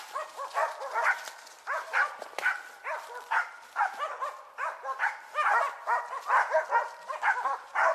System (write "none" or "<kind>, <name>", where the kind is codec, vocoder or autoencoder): none